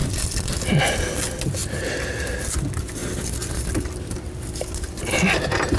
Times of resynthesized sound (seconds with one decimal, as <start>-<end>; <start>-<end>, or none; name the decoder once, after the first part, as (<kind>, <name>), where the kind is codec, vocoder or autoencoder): none